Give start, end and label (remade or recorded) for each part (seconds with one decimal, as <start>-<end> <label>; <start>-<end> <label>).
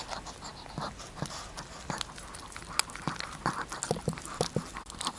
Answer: 0.0-5.2 recorded